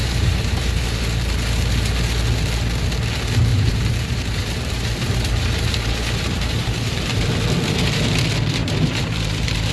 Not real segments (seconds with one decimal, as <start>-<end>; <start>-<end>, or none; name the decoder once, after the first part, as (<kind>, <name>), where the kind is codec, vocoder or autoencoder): 0.0-1.0 (vocoder, BigVGAN v2); 3.5-7.2; 8.6-9.7